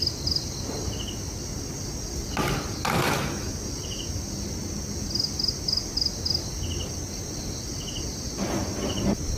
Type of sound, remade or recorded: recorded